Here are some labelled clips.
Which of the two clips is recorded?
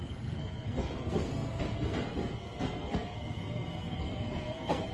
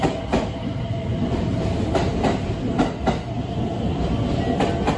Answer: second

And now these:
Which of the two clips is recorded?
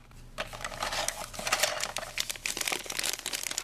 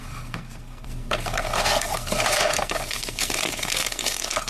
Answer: first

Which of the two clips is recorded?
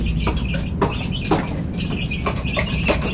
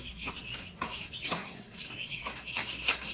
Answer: first